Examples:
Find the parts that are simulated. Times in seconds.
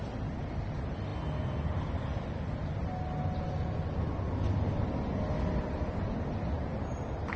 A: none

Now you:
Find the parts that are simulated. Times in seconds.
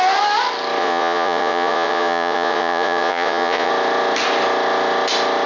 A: 0.8-3.7 (vocoder, Vocos)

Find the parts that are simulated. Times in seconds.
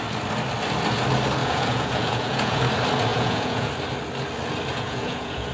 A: 1.4-2.6 (vocoder, Vocos); 3.1-3.7; 4.7-5.5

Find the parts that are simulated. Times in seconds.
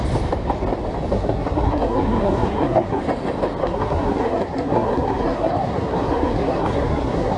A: 1.1-3.0 (codec, SNAC); 3.6-7.4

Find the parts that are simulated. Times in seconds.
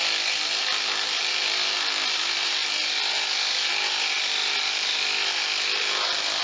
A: none